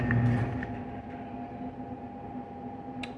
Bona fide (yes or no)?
yes